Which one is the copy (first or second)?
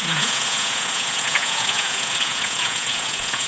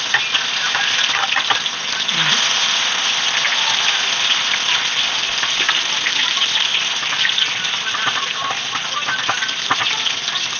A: first